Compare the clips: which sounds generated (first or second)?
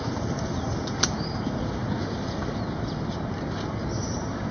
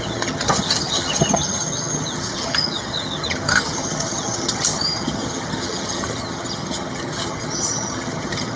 second